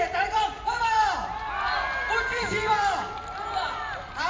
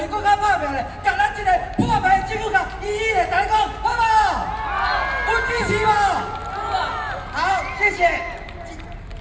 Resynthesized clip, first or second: first